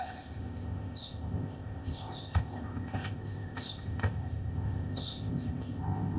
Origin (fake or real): fake